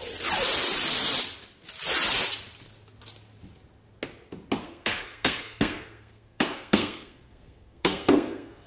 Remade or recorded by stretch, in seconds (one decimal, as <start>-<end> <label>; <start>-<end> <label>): 0.0-4.6 recorded; 4.6-8.7 remade